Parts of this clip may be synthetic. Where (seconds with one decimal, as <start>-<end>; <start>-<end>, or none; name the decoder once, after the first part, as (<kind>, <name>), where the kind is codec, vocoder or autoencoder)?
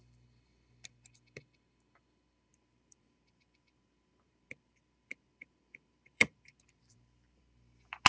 2.5-7.4 (vocoder, BigVGAN v2)